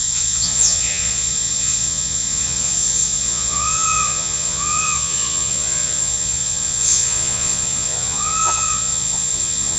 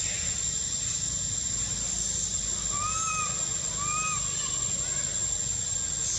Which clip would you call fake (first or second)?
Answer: first